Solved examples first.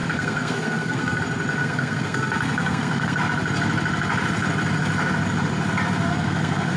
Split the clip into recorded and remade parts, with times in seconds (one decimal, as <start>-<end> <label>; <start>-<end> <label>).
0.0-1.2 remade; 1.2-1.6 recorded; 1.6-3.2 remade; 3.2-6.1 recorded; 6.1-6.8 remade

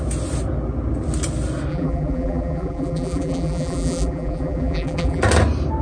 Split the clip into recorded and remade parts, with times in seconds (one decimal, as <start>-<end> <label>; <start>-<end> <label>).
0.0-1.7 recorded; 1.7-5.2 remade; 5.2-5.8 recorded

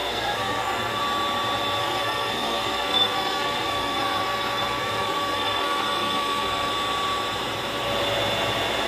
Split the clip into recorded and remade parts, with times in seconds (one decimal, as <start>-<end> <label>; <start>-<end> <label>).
0.0-1.0 remade; 1.0-1.8 recorded; 1.8-6.7 remade; 6.7-8.9 recorded

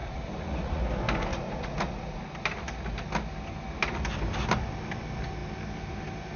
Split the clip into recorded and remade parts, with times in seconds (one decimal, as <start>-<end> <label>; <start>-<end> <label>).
0.0-0.8 remade; 0.8-1.3 recorded; 1.3-2.2 remade; 2.2-6.4 recorded

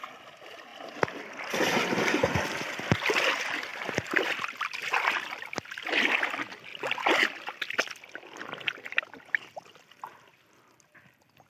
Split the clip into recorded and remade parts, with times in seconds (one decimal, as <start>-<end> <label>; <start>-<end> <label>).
0.0-0.7 recorded; 0.7-1.5 remade; 1.5-3.7 recorded; 3.7-4.8 remade; 4.8-11.5 recorded

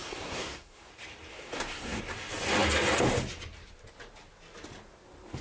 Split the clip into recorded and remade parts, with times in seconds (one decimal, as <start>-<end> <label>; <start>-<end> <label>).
0.0-0.9 remade; 0.9-1.3 recorded; 1.3-2.0 remade; 2.0-5.4 recorded

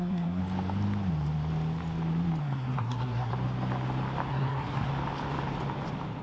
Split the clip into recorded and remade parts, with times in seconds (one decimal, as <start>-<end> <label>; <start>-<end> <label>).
0.0-0.4 remade; 0.4-2.4 recorded; 2.4-3.3 remade; 3.3-4.3 recorded; 4.3-4.9 remade; 4.9-6.2 recorded

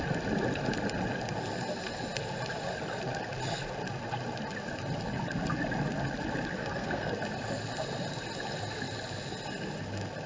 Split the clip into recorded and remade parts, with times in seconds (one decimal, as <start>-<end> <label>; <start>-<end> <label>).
0.0-6.6 recorded; 6.6-7.1 remade; 7.1-10.3 recorded